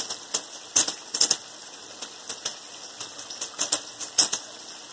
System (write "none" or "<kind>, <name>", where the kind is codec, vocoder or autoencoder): none